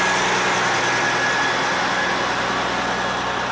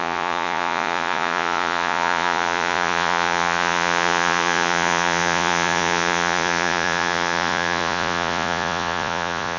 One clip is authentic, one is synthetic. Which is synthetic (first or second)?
second